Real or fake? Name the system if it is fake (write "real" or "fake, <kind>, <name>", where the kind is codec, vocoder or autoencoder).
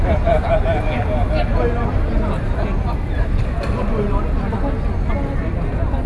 real